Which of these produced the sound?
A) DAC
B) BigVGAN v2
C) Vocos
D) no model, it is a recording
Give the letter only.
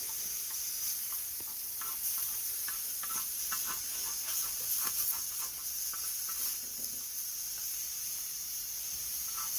D